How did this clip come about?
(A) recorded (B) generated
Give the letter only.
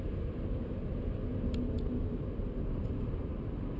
A